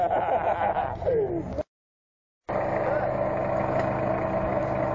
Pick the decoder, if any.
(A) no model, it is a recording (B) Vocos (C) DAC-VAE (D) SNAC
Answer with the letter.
A